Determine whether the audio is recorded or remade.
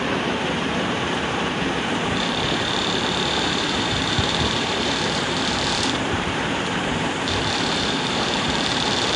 remade